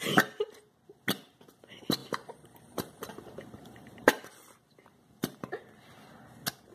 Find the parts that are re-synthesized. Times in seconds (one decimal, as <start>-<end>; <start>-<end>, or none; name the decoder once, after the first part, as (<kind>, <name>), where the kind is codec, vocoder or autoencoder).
2.0-5.5 (vocoder, BigVGAN v2)